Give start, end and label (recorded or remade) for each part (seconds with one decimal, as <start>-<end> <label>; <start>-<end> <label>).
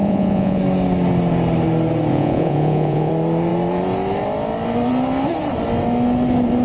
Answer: 0.0-0.6 remade; 0.6-2.1 recorded; 2.1-3.1 remade; 3.1-6.6 recorded